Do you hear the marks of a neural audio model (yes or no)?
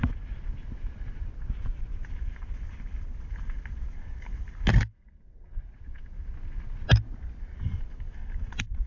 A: no